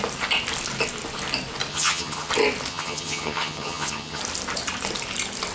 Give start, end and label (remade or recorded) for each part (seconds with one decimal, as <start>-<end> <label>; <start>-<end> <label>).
0.0-1.7 recorded; 1.7-2.3 remade; 2.3-2.7 recorded; 2.7-4.2 remade; 4.2-5.5 recorded